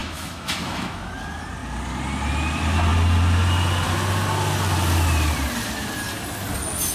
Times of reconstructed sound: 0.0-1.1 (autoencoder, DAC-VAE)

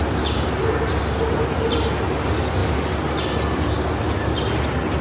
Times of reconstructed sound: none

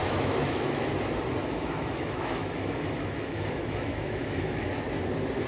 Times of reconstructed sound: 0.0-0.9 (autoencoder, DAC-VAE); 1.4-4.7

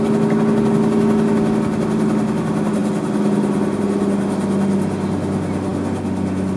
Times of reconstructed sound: none

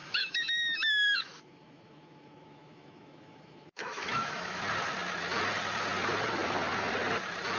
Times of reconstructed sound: 0.0-4.6 (autoencoder, DAC-VAE)